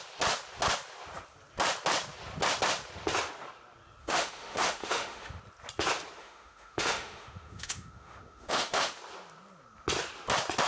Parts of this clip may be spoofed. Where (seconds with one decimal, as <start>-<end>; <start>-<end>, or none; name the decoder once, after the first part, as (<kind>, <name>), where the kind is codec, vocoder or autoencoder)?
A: 4.0-5.4 (autoencoder, DAC-VAE); 6.2-9.0